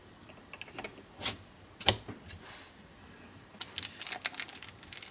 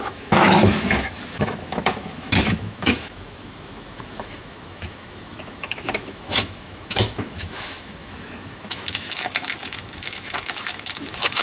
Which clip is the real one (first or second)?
first